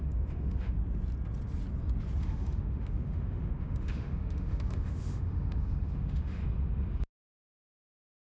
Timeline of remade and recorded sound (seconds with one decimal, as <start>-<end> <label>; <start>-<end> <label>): 0.0-0.8 remade; 0.8-2.2 recorded; 2.2-6.4 remade; 6.4-7.2 recorded; 7.2-8.4 remade